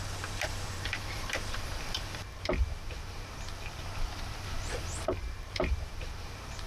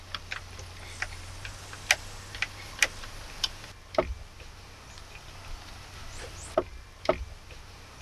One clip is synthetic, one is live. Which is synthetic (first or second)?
first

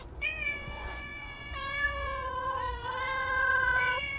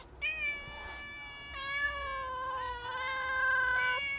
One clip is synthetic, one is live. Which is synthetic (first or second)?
first